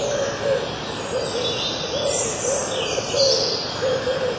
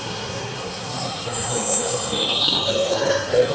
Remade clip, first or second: second